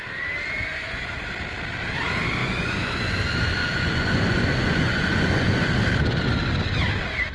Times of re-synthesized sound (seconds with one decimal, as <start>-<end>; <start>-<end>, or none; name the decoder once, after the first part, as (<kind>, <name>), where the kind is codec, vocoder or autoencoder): 0.7-1.3 (vocoder, Vocos); 2.4-3.2; 3.6-5.7